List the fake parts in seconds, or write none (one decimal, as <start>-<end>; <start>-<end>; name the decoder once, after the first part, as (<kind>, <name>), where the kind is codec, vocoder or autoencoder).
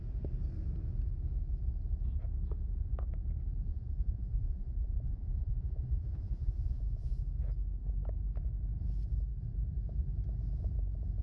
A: 3.7-7.2 (vocoder, Vocos)